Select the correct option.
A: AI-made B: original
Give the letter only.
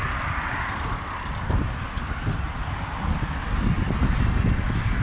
B